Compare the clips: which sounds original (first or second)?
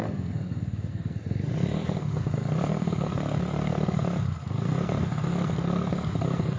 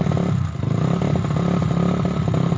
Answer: second